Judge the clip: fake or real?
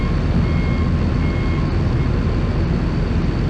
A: real